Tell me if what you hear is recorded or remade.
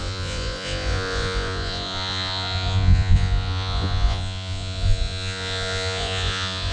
remade